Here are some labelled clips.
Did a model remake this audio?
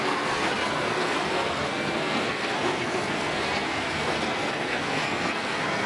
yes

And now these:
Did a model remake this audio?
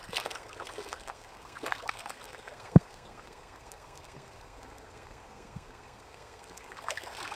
yes